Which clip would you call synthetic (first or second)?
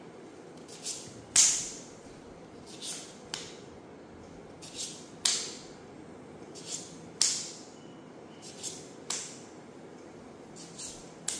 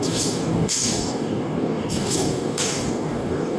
second